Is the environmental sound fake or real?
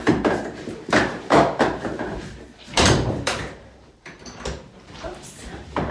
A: fake